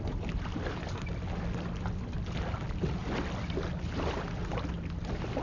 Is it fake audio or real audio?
real